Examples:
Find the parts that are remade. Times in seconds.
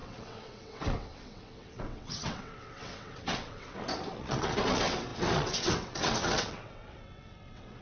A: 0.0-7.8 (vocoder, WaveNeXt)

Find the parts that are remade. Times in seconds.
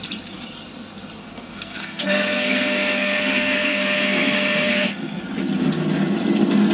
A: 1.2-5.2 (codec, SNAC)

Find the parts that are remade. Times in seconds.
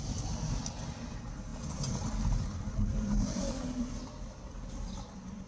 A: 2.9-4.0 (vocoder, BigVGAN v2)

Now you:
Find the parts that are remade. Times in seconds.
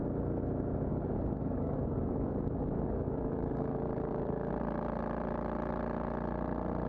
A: 0.9-4.5 (codec, DAC)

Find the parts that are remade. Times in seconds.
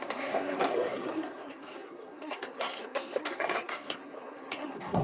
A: 0.0-5.0 (codec, SNAC)